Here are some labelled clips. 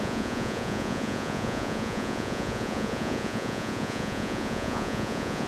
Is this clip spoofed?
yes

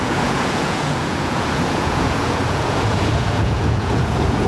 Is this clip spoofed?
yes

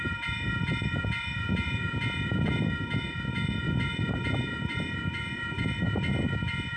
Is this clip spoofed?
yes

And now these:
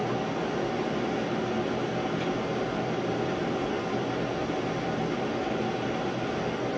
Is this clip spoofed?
no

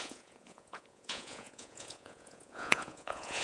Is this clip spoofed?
yes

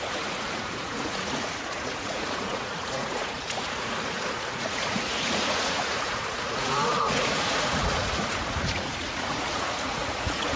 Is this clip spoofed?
yes